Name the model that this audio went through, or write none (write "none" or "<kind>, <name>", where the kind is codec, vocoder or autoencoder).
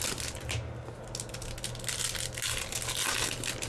none